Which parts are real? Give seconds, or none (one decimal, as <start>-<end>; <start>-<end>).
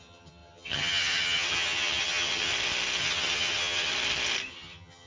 2.5-3.0; 3.9-4.5